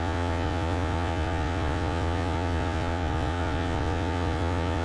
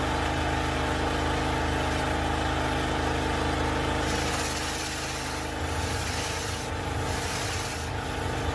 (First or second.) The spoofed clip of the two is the first